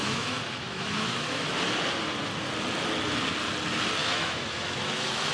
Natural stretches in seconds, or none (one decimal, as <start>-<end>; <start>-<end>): 1.5-4.0

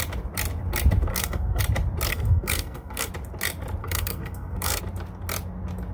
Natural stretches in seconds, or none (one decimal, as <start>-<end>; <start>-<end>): 0.0-1.1; 1.6-2.1; 3.1-3.8; 4.8-5.9

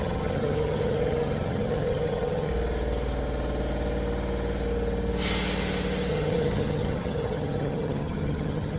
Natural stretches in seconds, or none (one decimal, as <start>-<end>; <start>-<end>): 2.5-6.1

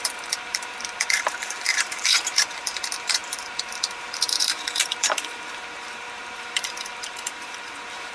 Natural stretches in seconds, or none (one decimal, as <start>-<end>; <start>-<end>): none

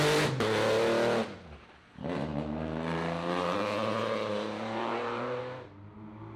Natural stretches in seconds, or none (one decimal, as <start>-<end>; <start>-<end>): 0.0-2.3; 5.4-6.4

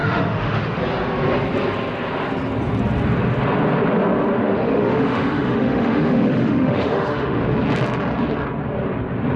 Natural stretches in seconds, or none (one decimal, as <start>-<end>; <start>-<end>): 0.8-4.4; 7.4-9.4